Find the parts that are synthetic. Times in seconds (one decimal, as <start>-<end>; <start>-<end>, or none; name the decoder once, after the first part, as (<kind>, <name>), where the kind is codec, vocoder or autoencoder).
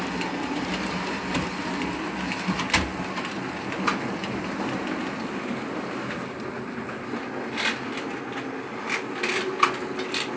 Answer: none